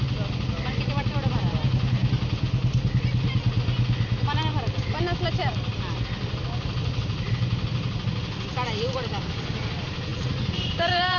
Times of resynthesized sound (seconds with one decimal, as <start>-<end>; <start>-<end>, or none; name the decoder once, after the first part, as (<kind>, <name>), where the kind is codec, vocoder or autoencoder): 10.1-11.2 (vocoder, BigVGAN v2)